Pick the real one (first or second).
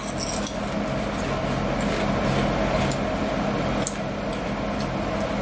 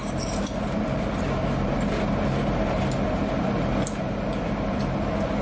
first